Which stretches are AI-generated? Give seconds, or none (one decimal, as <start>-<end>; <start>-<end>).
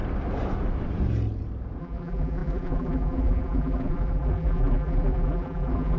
1.8-6.0